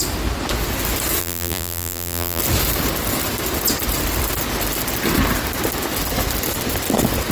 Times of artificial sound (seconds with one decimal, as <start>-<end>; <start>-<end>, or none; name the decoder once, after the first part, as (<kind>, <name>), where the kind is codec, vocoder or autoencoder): 1.2-2.4 (vocoder, BigVGAN v2)